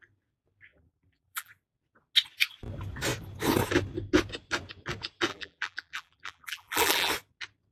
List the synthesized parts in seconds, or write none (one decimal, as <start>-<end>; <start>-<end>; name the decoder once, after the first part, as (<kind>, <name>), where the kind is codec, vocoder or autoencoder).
0.7-1.5 (vocoder, BigVGAN v2); 5.3-7.1